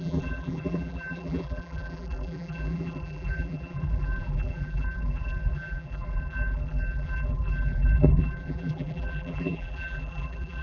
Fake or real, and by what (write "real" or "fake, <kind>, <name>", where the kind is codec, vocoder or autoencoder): fake, vocoder, BigVGAN v2